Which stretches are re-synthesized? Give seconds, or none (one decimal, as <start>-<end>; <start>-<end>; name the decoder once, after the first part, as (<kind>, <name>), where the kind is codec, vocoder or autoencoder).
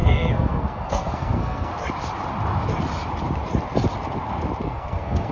0.0-1.7 (codec, SNAC); 4.6-5.3